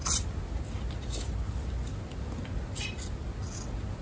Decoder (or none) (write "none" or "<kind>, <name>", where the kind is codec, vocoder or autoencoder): none